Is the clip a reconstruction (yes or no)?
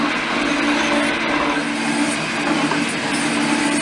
no